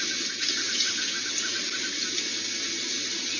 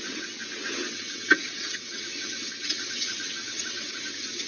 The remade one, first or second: second